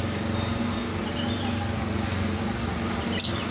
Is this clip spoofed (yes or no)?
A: no